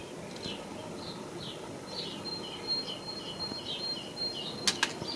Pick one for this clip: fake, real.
real